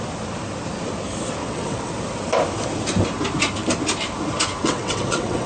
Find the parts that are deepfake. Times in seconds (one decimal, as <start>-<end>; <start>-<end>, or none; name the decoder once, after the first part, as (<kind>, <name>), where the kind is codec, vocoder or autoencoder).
1.4-1.9 (vocoder, WaveNeXt); 4.6-5.5